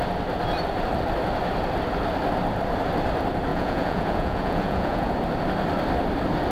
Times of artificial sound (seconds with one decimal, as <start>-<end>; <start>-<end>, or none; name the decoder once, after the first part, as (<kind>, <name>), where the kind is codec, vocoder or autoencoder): 3.5-5.2 (vocoder, Vocos)